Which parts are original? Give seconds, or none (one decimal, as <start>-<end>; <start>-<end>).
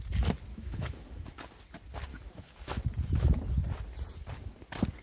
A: 0.0-0.5; 1.3-2.1; 2.8-5.0